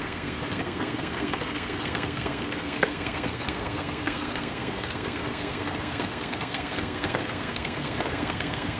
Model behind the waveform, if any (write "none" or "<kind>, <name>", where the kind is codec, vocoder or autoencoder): codec, SNAC